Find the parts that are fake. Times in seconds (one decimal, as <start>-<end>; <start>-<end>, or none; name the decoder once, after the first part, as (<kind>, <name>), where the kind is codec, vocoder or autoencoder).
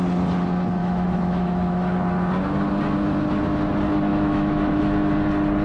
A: 0.8-2.0 (autoencoder, DAC-VAE); 4.1-4.8